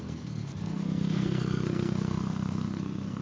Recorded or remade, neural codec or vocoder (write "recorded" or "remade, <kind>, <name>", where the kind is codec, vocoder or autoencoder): remade, codec, SNAC